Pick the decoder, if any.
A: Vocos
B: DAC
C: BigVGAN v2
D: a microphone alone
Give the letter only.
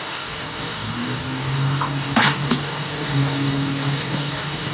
B